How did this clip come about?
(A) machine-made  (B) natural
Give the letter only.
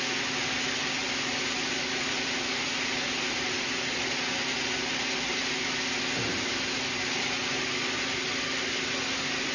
B